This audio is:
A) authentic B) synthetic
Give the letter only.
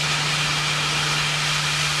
A